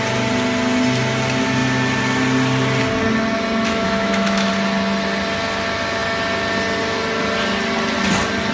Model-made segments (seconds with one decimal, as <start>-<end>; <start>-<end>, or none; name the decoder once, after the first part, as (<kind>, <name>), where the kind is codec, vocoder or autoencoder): 4.0-4.5 (autoencoder, DAC-VAE)